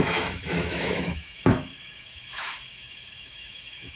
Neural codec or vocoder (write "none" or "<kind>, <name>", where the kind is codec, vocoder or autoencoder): autoencoder, DAC-VAE